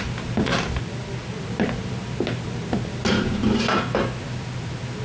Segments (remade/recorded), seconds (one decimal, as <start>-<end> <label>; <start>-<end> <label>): 0.0-5.0 recorded